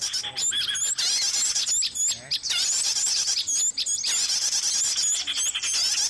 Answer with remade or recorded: recorded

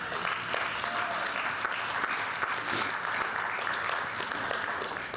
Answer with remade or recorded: recorded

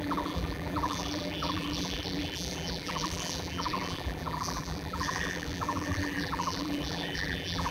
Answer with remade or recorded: remade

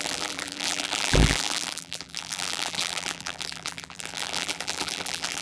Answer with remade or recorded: remade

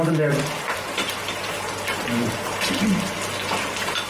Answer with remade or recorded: recorded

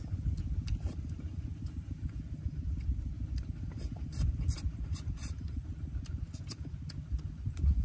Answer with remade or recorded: recorded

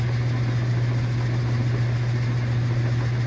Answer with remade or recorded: recorded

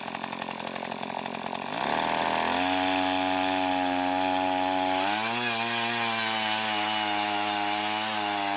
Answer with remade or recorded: recorded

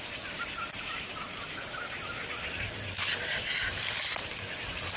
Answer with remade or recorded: remade